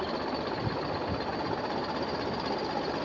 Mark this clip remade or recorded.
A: recorded